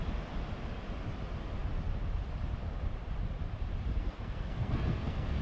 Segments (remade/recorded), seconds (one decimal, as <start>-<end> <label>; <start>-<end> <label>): 0.0-4.0 recorded; 4.0-5.4 remade